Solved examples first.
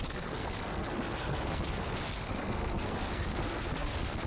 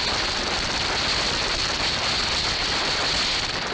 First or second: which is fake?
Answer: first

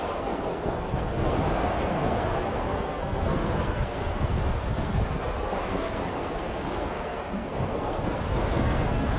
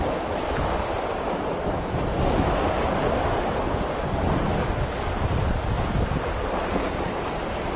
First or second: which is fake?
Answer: first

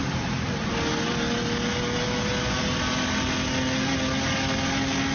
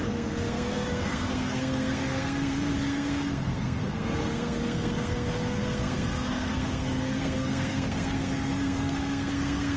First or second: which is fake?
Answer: second